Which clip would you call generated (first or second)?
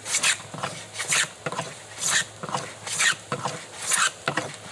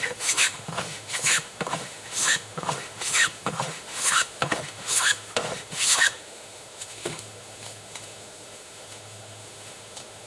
second